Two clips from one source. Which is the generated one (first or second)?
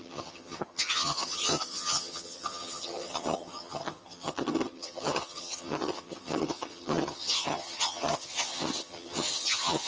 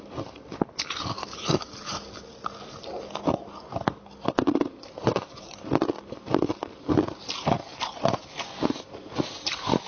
first